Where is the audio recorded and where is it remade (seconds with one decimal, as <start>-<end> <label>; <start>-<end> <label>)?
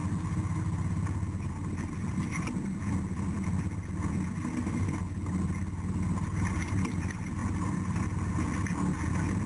0.0-9.5 recorded